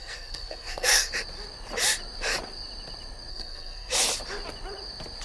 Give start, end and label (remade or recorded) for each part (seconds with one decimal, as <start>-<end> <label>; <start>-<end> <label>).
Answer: 0.0-1.1 remade; 1.1-3.3 recorded; 3.3-3.9 remade; 3.9-5.2 recorded